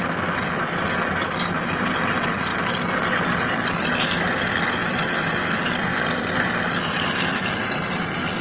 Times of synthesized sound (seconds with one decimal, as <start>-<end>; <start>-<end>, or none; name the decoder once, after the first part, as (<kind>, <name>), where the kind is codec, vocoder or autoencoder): none